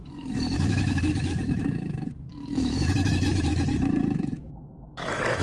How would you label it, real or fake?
fake